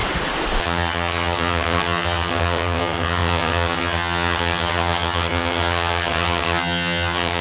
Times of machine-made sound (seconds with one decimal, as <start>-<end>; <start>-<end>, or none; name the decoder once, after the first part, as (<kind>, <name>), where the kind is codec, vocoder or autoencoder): 0.6-7.4 (vocoder, HiFi-GAN)